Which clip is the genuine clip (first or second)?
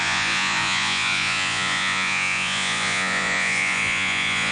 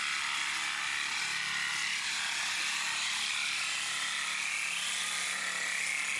second